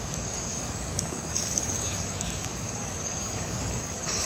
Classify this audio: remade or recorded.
remade